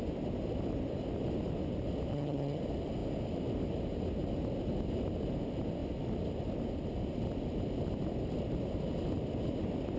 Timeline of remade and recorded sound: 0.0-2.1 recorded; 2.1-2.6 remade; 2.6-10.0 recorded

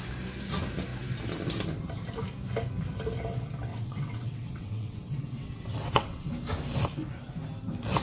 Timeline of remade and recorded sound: 0.0-3.7 recorded; 3.7-6.3 remade; 6.3-8.0 recorded

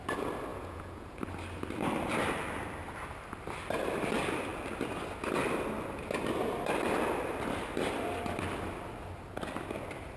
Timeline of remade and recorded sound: 0.0-0.5 recorded; 0.5-1.2 remade; 1.2-10.2 recorded

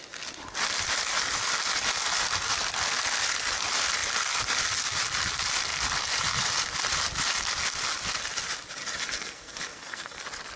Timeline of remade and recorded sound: 0.0-8.8 recorded; 8.8-10.2 remade; 10.2-10.6 recorded

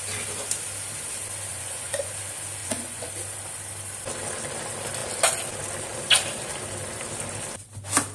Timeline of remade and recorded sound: 0.0-1.5 recorded; 1.5-2.1 remade; 2.1-2.6 recorded; 2.6-3.1 remade; 3.1-8.1 recorded

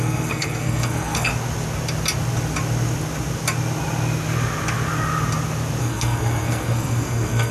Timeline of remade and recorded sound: 0.0-1.3 remade; 1.3-5.8 recorded; 5.8-7.5 remade